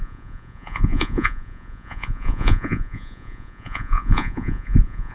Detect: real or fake fake